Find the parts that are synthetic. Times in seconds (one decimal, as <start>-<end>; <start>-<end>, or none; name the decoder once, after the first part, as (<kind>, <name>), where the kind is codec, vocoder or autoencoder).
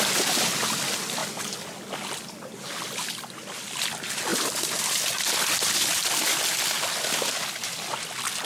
none